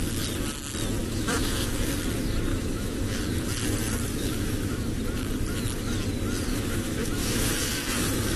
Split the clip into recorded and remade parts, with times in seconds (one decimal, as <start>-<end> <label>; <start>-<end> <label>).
0.0-1.0 recorded; 1.0-1.9 remade; 1.9-2.5 recorded; 2.5-3.2 remade; 3.2-4.1 recorded; 4.1-5.0 remade; 5.0-6.5 recorded; 6.5-8.4 remade